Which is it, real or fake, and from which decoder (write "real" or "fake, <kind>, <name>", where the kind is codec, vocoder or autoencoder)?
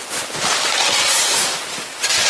real